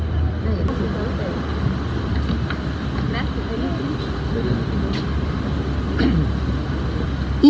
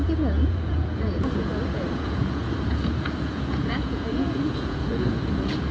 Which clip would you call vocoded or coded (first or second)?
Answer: second